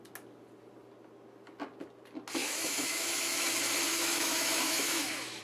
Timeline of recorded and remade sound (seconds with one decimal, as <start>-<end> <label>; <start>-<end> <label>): 0.0-2.4 recorded; 2.4-3.5 remade; 3.5-3.9 recorded; 3.9-5.4 remade

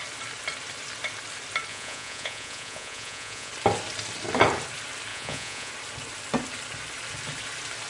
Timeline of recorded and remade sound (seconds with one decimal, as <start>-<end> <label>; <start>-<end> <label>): 0.0-1.7 recorded; 1.7-3.5 remade; 3.5-5.1 recorded; 5.1-5.7 remade; 5.7-7.9 recorded

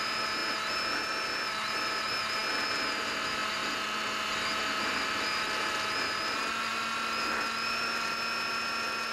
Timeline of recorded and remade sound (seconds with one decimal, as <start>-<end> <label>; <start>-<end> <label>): 0.0-9.1 recorded

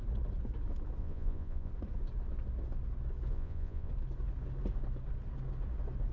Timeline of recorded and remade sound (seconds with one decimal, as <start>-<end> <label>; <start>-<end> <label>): 0.0-1.0 recorded; 1.0-1.7 remade; 1.7-3.3 recorded; 3.3-3.9 remade; 3.9-6.1 recorded